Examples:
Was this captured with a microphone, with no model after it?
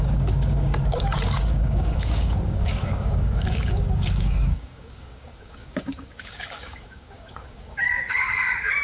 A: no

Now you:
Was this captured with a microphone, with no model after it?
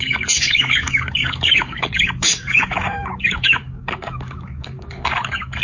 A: no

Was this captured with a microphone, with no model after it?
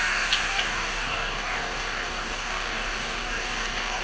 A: no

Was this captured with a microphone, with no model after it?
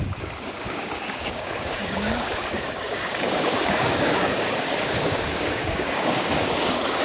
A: no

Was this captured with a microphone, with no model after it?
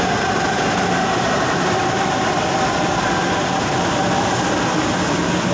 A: yes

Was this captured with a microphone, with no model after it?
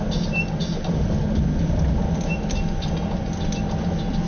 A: yes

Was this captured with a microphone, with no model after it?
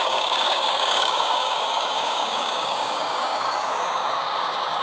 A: no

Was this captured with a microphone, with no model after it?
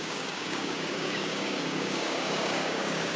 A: no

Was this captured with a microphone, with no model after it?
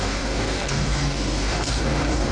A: no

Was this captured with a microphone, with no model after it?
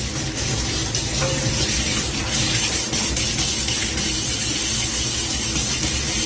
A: yes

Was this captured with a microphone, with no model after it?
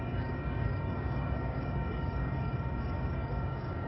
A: no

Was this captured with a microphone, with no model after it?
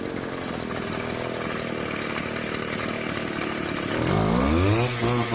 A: yes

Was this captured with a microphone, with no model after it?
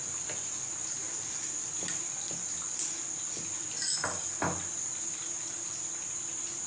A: yes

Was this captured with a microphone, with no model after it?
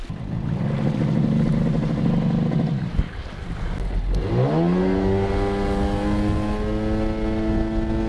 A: yes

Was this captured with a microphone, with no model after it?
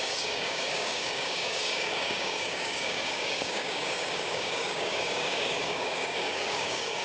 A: no